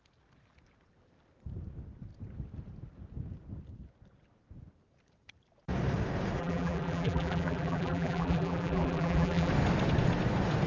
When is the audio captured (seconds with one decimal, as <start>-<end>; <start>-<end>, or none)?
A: 0.0-6.4; 9.5-10.7